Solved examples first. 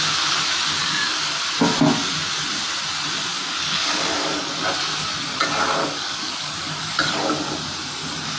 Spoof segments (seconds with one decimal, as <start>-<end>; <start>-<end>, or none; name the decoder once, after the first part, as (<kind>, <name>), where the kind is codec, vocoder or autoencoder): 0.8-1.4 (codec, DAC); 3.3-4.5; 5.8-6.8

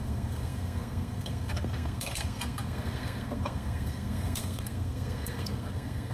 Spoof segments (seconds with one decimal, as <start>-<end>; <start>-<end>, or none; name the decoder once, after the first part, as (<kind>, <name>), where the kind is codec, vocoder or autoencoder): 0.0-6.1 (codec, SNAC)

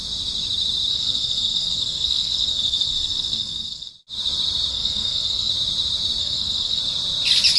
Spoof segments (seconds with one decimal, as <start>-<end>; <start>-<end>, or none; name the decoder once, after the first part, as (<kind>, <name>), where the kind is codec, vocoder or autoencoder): 0.9-3.9 (codec, SNAC); 4.7-5.5; 6.2-6.8

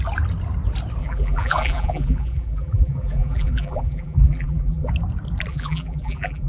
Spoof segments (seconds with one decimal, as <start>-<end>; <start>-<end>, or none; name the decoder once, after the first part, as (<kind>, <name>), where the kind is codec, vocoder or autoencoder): 1.0-4.9 (vocoder, BigVGAN v2); 5.5-6.5

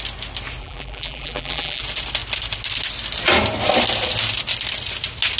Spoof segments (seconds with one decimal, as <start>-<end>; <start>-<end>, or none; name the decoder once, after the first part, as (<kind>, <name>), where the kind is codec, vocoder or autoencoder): 0.6-1.8 (vocoder, BigVGAN v2)

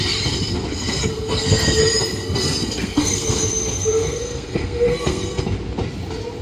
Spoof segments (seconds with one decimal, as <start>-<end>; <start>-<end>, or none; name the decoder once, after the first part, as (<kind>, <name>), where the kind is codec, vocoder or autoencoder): 0.7-1.8 (codec, SNAC); 2.2-5.4

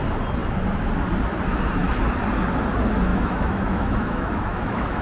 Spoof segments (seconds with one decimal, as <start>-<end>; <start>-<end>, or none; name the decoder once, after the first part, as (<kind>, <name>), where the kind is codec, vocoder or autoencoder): 3.1-5.0 (autoencoder, DAC-VAE)

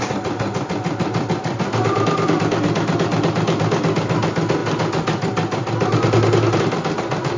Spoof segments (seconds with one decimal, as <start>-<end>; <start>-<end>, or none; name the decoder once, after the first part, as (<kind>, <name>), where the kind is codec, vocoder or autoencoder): none